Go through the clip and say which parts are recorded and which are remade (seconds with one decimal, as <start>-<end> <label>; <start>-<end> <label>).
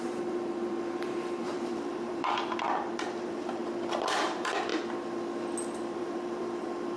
0.0-3.6 remade; 3.6-4.2 recorded; 4.2-4.7 remade; 4.7-6.0 recorded; 6.0-7.0 remade